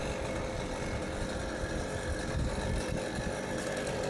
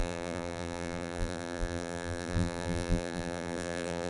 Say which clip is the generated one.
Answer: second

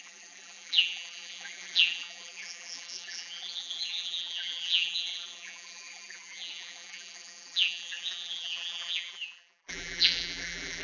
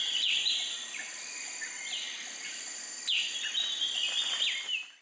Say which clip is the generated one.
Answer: first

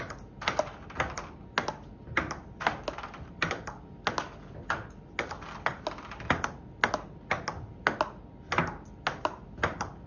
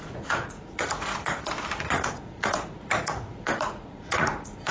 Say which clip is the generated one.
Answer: second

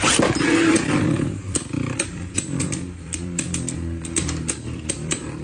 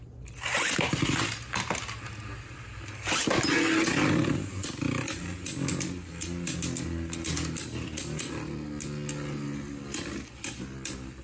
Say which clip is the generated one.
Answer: first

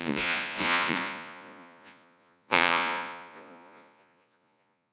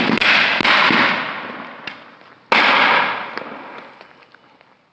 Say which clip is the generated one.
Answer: first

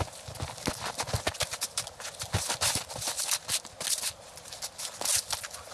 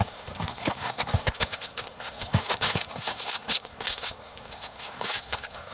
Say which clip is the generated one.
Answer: second